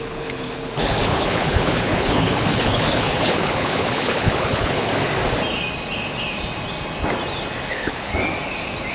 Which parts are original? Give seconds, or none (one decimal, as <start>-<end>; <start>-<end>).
4.9-7.7; 8.1-8.9